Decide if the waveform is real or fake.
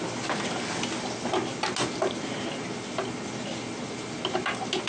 real